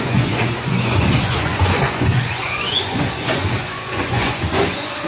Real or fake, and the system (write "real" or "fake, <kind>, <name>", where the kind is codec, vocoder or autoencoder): fake, vocoder, Vocos